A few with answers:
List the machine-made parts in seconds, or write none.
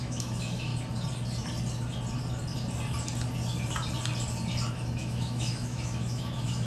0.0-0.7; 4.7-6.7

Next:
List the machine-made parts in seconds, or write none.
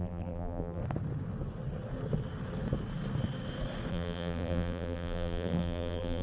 0.0-0.8; 3.9-6.2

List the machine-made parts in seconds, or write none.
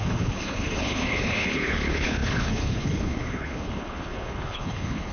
0.0-5.1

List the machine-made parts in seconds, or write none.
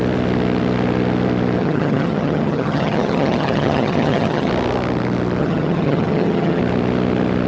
1.6-4.5; 5.4-6.6